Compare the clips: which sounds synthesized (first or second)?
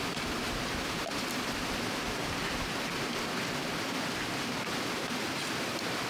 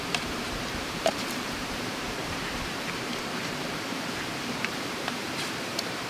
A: second